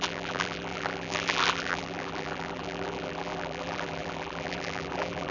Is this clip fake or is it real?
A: fake